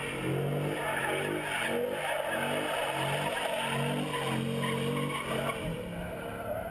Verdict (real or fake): real